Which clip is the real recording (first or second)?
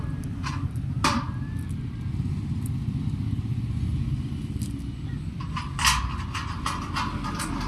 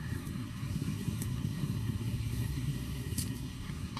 first